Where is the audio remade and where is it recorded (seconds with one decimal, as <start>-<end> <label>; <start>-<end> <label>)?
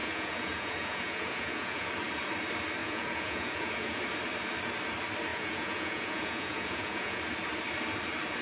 0.0-1.9 remade; 1.9-2.8 recorded; 2.8-4.0 remade; 4.0-5.3 recorded; 5.3-7.2 remade; 7.2-8.4 recorded